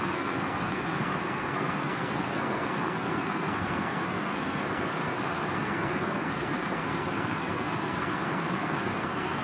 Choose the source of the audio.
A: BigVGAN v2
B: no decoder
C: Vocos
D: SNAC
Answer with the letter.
D